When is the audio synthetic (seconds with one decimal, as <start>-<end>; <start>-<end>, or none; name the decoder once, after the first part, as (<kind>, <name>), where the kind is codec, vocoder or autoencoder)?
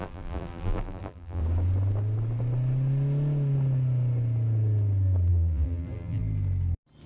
0.0-1.4 (vocoder, BigVGAN v2); 5.3-6.2